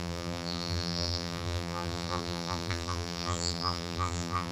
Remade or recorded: remade